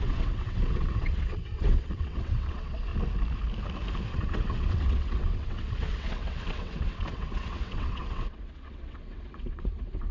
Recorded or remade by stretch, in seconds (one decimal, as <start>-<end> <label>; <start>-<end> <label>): 0.0-2.9 remade; 2.9-4.1 recorded; 4.1-10.1 remade